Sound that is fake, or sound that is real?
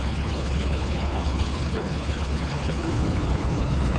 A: fake